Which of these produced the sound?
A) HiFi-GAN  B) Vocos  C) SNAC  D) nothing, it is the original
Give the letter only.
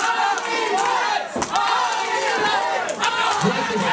D